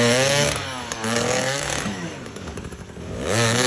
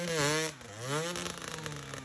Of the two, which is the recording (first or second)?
second